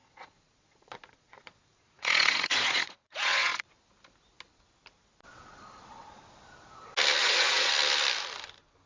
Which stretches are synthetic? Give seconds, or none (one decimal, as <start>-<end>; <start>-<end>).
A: 0.0-3.7; 5.3-6.2; 7.2-7.7